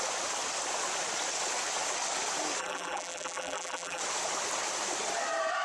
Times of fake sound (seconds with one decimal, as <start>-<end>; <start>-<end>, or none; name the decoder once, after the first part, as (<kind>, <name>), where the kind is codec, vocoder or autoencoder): 2.6-4.0 (vocoder, BigVGAN v2)